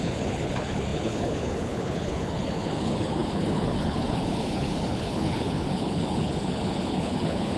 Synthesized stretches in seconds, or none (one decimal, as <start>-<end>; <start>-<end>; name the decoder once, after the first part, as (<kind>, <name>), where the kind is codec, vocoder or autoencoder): 0.0-7.6 (codec, HILCodec)